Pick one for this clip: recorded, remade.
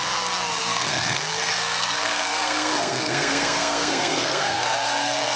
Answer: remade